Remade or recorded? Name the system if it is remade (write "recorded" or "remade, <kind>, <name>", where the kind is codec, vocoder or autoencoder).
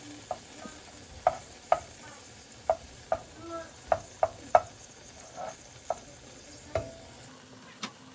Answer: recorded